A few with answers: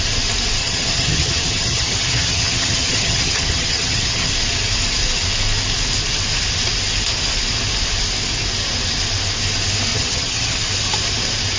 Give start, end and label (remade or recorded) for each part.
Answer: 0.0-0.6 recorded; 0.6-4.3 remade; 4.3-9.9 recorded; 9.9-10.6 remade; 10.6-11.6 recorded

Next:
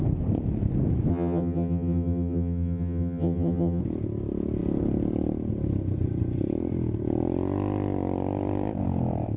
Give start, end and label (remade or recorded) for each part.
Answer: 0.0-1.1 recorded; 1.1-3.8 remade; 3.8-9.4 recorded

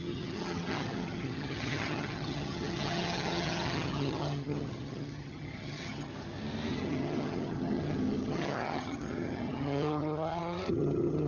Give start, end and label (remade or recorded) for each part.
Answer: 0.0-6.1 remade; 6.1-6.7 recorded; 6.7-11.3 remade

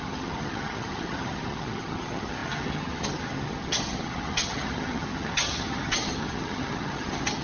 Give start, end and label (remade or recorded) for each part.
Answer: 0.0-7.4 remade

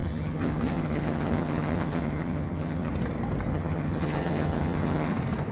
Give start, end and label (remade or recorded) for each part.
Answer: 0.0-2.9 remade; 2.9-3.5 recorded; 3.5-5.1 remade; 5.1-5.5 recorded

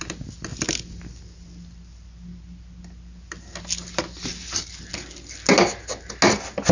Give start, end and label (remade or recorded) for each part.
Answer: 0.0-6.7 recorded

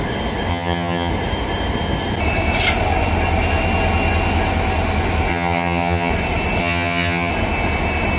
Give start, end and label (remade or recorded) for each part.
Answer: 0.0-0.5 recorded; 0.5-1.1 remade; 1.1-5.3 recorded; 5.3-6.1 remade; 6.1-6.6 recorded; 6.6-7.3 remade; 7.3-8.2 recorded